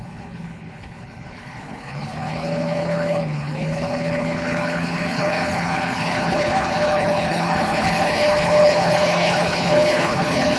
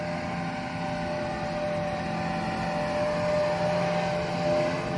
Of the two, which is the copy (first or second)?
first